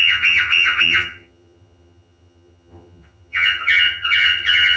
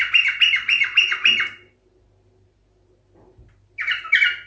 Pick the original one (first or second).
second